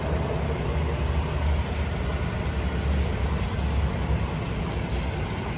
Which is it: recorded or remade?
recorded